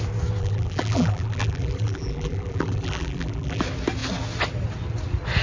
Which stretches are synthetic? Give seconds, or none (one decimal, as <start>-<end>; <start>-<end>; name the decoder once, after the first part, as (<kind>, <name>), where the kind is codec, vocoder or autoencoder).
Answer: 0.4-3.6 (vocoder, BigVGAN v2)